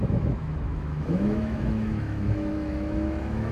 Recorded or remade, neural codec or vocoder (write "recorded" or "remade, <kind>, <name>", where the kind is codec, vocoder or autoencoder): remade, autoencoder, DAC-VAE